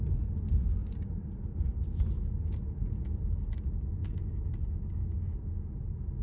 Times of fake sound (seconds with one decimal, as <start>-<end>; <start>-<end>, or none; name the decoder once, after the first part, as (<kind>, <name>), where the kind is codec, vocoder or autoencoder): none